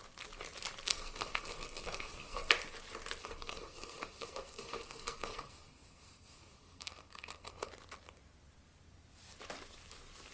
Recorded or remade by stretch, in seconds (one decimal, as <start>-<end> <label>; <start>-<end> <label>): 0.0-0.9 recorded; 0.9-2.5 remade; 2.5-3.2 recorded; 3.2-7.7 remade; 7.7-10.3 recorded